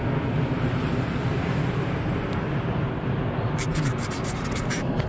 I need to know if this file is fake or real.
real